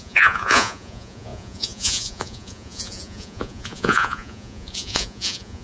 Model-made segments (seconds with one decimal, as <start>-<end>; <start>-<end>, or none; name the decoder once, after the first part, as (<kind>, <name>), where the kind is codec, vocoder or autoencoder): 0.0-5.6 (vocoder, Vocos)